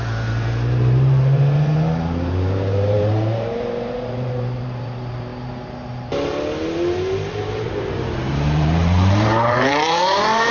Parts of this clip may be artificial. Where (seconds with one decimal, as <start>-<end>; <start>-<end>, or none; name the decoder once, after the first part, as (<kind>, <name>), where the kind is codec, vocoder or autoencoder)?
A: 0.0-5.3 (vocoder, BigVGAN v2); 7.3-10.5